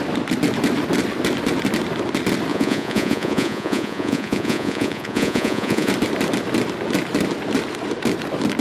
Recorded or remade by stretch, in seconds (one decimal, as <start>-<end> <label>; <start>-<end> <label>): 0.0-2.5 recorded; 2.5-5.9 remade; 5.9-8.6 recorded